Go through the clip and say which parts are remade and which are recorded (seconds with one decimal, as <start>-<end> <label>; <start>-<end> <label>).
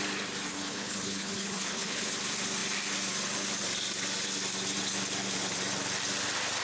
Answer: 0.0-0.5 recorded; 0.5-2.1 remade; 2.1-6.6 recorded